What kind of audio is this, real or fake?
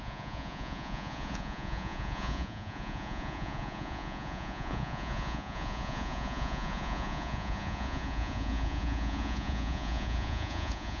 fake